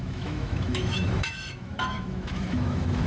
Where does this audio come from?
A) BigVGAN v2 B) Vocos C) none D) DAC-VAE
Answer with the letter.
D